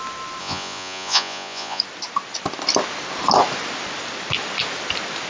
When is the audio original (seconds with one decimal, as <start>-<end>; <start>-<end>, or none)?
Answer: 0.0-0.4; 1.8-5.3